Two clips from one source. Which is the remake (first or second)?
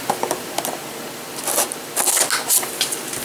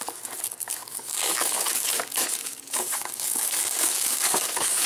second